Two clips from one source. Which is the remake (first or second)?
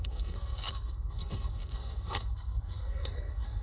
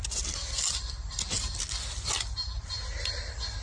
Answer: first